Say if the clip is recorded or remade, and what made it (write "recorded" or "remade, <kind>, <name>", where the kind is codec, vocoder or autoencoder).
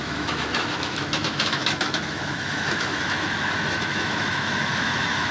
remade, autoencoder, DAC-VAE